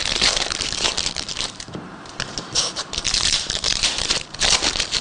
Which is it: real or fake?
fake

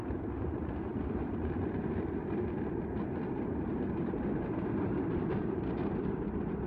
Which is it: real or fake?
fake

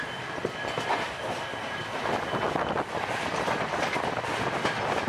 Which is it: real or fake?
fake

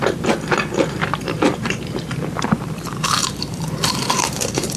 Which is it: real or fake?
fake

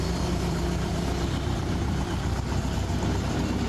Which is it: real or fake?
fake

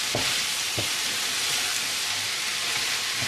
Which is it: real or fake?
fake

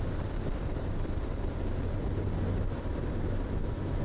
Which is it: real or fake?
fake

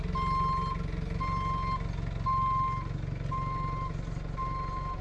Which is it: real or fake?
real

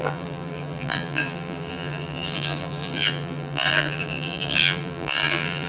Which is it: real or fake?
fake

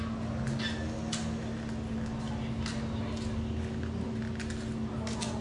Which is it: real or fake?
real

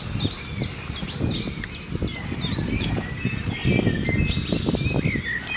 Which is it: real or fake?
real